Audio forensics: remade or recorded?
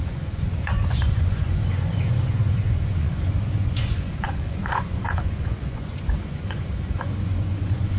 remade